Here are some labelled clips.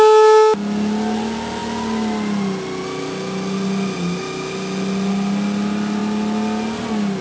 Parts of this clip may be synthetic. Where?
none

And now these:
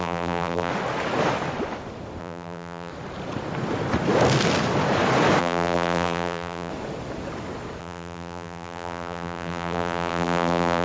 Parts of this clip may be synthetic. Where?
0.0-0.7 (vocoder, BigVGAN v2); 2.2-2.9; 5.4-6.7; 7.8-10.8

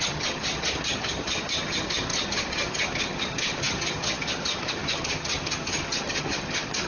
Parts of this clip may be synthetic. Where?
0.0-6.9 (vocoder, HiFi-GAN)